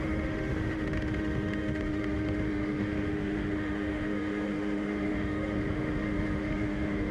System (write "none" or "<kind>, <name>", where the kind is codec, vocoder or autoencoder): autoencoder, DAC-VAE